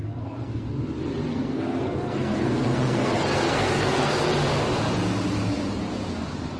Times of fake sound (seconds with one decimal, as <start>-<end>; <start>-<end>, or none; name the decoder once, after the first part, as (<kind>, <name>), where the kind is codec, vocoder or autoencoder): 0.0-0.7 (codec, SNAC); 1.3-4.3